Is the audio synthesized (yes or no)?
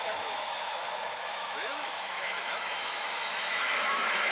yes